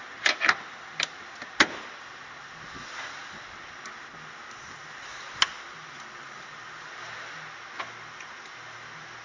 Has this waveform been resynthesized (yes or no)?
no